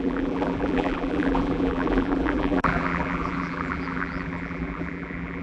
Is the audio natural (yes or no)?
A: no